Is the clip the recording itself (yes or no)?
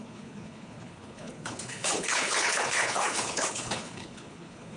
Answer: no